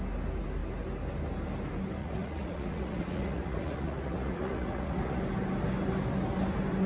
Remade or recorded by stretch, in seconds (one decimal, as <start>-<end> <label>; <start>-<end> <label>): 0.0-2.0 recorded; 2.0-5.2 remade; 5.2-6.9 recorded